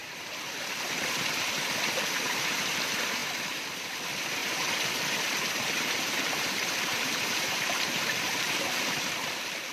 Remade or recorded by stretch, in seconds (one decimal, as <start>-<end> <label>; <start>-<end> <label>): 0.0-2.5 remade; 2.5-4.4 recorded; 4.4-9.1 remade; 9.1-9.7 recorded